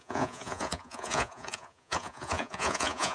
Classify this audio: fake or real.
fake